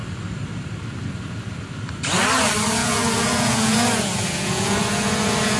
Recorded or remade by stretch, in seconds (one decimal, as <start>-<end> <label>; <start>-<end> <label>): 0.0-2.8 recorded; 2.8-5.6 remade